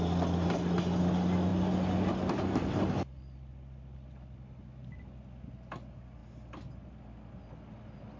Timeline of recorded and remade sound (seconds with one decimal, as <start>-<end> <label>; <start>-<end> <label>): 0.0-8.2 recorded